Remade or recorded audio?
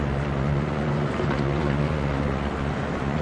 remade